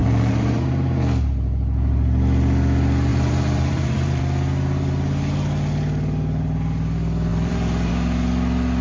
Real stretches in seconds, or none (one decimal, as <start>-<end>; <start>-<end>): 0.9-3.1; 4.2-7.3; 7.9-8.8